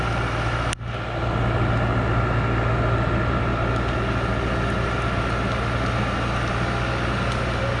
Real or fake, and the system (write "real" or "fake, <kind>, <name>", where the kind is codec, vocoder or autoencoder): real